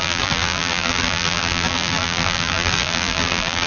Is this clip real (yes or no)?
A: no